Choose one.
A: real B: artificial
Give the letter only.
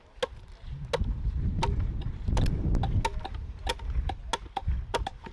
A